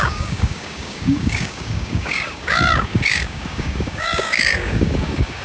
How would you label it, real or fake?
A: fake